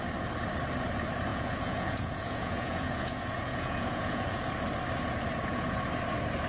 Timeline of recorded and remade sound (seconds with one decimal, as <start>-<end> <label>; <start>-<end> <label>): 0.0-1.3 recorded; 1.3-4.4 remade; 4.4-6.5 recorded